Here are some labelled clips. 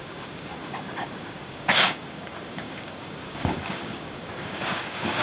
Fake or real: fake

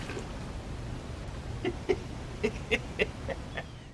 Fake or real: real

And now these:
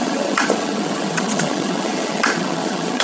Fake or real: fake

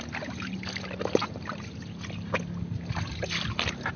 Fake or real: real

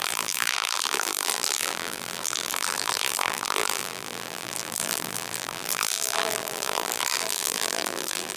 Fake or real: fake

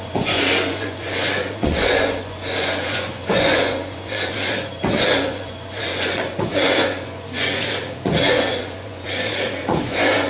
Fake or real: fake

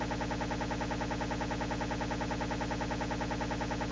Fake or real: real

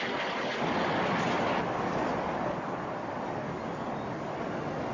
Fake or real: real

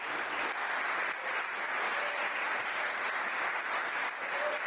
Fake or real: real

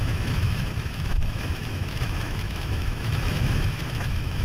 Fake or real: fake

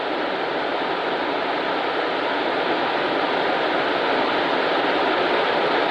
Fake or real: real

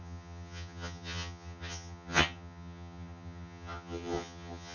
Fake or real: fake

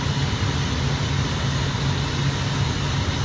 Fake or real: real